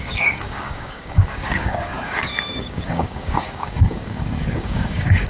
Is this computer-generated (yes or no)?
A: yes